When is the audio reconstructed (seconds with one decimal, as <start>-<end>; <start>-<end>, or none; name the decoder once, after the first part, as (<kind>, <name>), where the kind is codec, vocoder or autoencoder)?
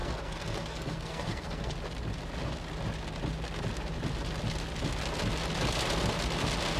0.0-1.7 (codec, SNAC)